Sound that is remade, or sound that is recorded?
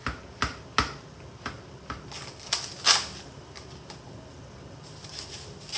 recorded